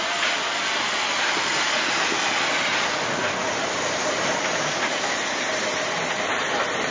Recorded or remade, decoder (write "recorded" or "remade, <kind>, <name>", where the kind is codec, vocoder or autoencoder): recorded